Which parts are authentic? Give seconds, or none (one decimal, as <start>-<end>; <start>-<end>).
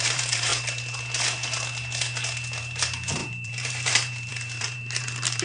0.5-2.6